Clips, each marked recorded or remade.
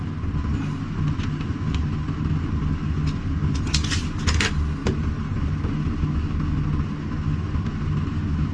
recorded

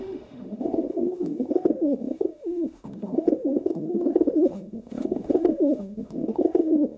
remade